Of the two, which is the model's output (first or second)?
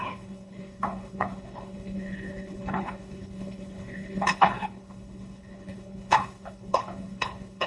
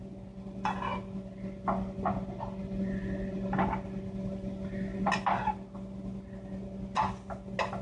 first